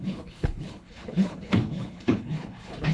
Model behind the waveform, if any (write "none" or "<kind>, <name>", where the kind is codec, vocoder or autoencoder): codec, HILCodec